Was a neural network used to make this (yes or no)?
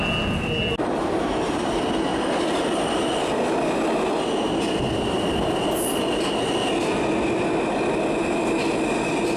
no